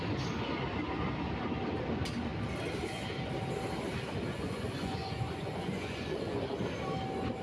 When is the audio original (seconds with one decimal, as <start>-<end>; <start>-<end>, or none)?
0.0-4.3; 6.4-7.4